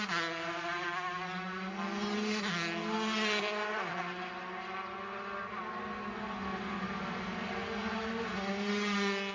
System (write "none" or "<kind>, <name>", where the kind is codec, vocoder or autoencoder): none